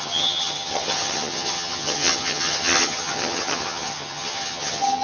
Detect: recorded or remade remade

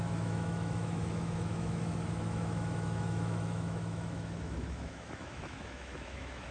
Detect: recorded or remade remade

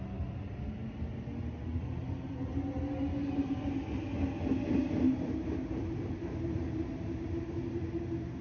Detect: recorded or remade recorded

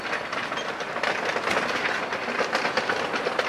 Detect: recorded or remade recorded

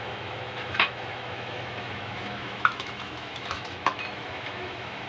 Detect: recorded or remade remade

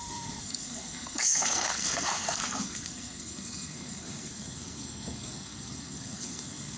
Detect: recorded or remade remade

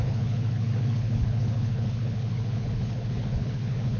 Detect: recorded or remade remade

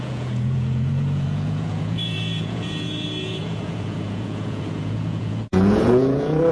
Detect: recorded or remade remade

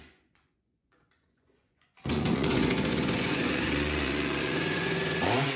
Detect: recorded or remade remade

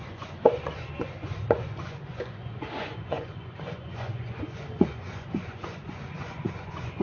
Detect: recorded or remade remade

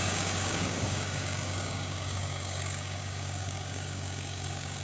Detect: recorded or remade remade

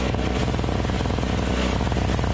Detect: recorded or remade recorded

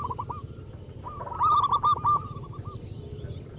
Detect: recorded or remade recorded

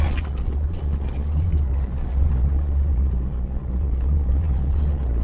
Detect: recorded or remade remade